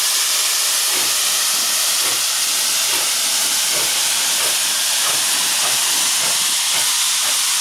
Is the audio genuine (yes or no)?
yes